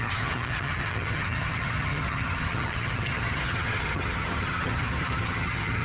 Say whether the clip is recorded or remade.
remade